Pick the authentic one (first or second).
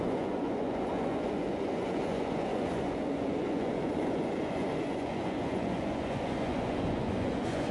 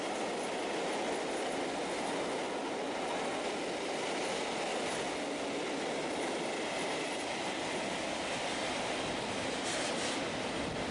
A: second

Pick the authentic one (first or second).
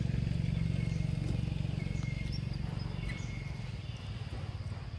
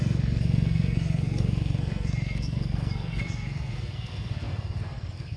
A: first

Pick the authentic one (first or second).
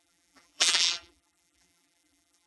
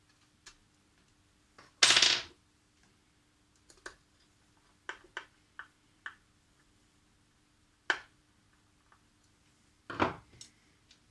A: second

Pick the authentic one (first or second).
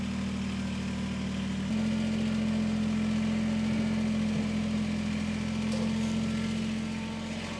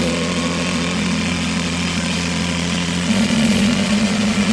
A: first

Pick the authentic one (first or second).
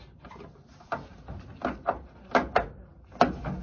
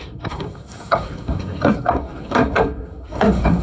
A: first